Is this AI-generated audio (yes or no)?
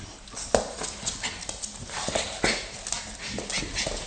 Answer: no